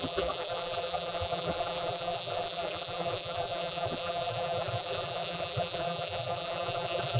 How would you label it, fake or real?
fake